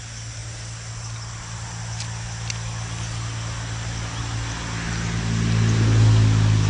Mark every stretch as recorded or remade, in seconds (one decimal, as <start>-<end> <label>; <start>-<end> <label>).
0.0-6.7 recorded